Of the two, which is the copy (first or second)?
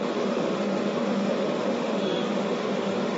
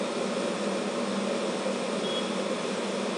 first